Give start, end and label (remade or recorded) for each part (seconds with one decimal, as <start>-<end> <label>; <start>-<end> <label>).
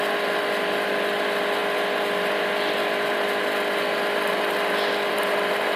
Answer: 0.0-5.8 recorded